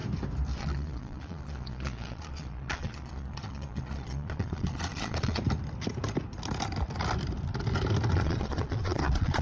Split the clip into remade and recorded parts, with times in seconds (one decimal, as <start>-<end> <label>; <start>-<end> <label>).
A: 0.0-0.6 recorded; 0.6-5.4 remade; 5.4-8.1 recorded; 8.1-9.4 remade